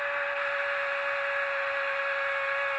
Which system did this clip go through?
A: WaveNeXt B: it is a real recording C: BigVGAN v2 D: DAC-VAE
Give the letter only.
B